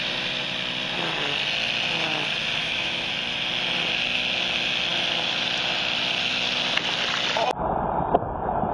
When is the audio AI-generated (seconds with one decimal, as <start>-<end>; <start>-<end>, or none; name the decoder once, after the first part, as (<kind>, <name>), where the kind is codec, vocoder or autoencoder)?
2.6-3.1 (autoencoder, DAC-VAE)